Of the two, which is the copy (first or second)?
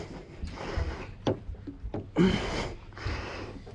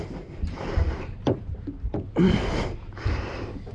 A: second